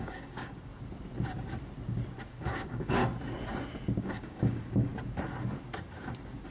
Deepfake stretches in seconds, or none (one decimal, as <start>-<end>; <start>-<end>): 0.0-0.7; 2.3-3.0; 4.0-4.9